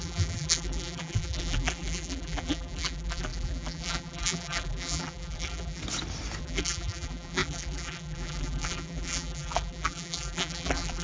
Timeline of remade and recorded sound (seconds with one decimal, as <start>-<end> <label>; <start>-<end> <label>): 0.0-5.8 remade; 5.8-6.4 recorded; 6.4-11.0 remade